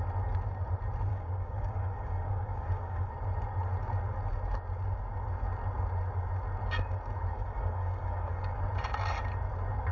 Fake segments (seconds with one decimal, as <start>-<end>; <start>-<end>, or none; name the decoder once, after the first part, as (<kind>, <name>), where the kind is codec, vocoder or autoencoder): 1.1-3.1 (codec, DAC); 7.3-8.6